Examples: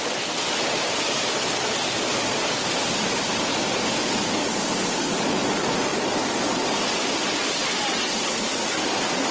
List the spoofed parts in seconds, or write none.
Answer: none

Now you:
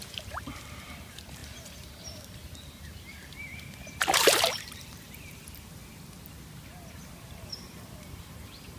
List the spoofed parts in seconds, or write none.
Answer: 0.0-5.8 (vocoder, BigVGAN v2); 7.0-8.8

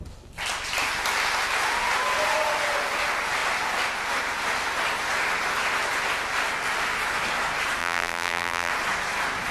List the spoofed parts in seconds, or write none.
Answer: 7.8-8.7 (vocoder, BigVGAN v2)